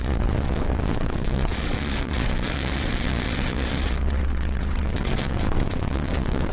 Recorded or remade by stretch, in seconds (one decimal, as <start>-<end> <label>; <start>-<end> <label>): 0.0-6.5 remade